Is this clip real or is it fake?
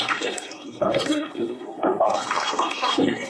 fake